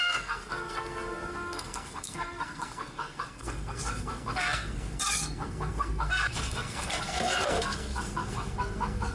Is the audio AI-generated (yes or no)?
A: yes